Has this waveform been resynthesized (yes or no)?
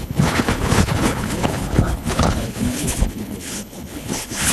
yes